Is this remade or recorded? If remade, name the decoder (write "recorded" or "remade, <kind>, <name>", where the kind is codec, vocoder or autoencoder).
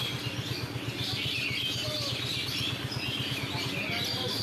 recorded